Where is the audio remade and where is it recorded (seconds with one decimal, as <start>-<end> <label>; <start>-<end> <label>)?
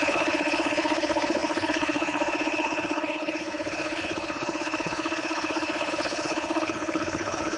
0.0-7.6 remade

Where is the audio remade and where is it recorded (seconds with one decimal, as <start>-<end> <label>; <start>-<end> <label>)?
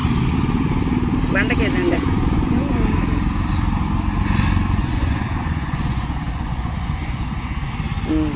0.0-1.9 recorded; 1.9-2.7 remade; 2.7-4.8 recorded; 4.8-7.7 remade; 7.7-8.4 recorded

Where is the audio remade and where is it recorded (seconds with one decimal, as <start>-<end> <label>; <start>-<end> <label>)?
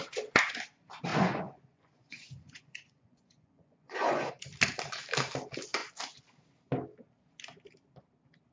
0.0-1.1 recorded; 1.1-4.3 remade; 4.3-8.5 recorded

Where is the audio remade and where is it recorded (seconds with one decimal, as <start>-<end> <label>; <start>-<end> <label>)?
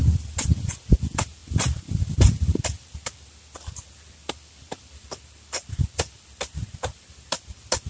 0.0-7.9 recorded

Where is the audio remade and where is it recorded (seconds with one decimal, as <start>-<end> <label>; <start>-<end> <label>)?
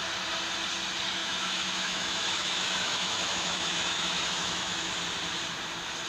0.0-1.2 recorded; 1.2-4.9 remade; 4.9-6.1 recorded